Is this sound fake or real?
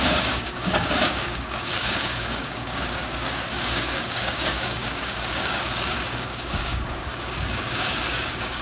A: fake